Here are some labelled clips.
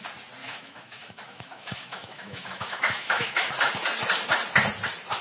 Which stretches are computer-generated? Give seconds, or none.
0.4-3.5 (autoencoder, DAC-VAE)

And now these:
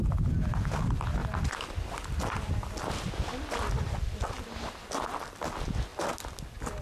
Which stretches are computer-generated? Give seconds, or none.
none

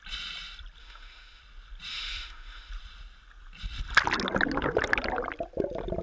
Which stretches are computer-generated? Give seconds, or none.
0.8-1.4 (autoencoder, DAC-VAE); 1.9-2.7